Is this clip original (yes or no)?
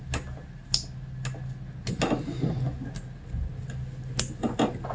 yes